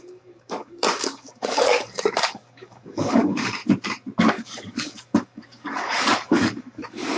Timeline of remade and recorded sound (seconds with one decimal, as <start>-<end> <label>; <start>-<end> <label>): 0.0-3.6 remade; 3.6-4.3 recorded; 4.3-7.2 remade